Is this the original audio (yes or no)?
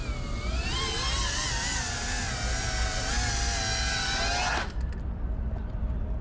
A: yes